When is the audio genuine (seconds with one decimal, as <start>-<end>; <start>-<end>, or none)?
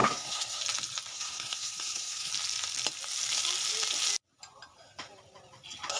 0.6-1.1; 2.3-6.0